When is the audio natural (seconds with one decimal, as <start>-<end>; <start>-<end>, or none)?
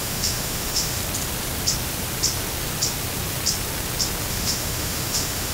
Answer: 1.0-4.3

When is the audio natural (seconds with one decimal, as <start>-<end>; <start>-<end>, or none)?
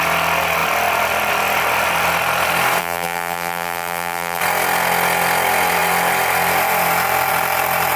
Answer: 0.0-2.8; 4.4-8.0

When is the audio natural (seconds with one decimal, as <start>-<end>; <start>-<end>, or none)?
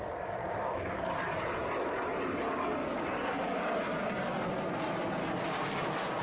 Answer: 0.0-0.4; 1.1-2.8; 4.1-5.2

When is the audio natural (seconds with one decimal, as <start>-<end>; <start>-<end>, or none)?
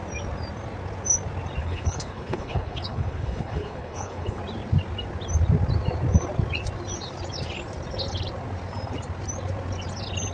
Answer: 0.0-1.6; 4.4-10.3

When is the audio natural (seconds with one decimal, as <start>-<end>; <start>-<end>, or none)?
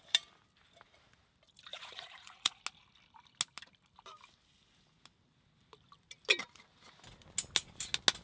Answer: 0.0-1.7; 2.6-8.2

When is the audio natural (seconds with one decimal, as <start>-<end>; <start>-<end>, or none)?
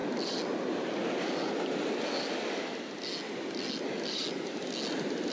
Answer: 0.0-5.3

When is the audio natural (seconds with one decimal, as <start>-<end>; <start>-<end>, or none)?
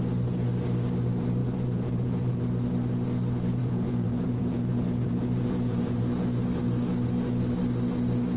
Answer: 0.0-1.4; 2.4-3.6; 6.0-8.4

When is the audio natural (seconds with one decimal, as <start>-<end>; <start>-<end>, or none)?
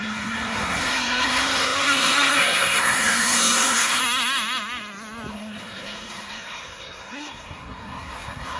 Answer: 4.0-5.3